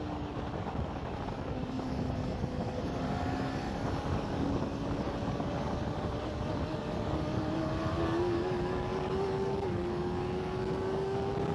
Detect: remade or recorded remade